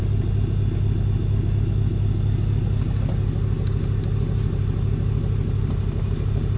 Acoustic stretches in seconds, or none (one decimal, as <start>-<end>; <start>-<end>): 0.0-6.6